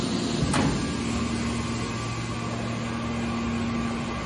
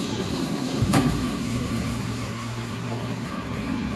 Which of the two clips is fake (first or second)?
second